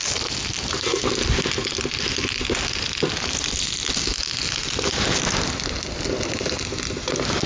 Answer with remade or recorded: recorded